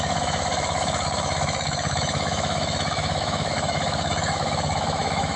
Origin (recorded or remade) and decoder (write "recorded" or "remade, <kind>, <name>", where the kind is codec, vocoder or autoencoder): remade, autoencoder, DAC-VAE